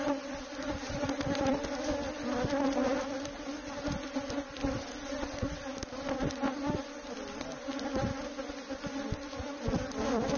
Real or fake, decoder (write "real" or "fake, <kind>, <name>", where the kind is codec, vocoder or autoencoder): real